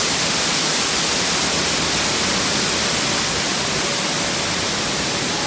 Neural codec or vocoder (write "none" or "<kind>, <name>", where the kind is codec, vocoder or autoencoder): none